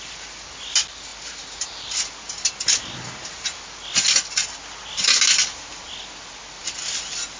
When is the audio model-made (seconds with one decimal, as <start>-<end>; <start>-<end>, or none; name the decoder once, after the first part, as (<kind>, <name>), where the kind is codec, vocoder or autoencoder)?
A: none